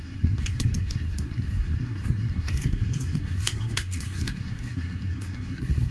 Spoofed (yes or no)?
yes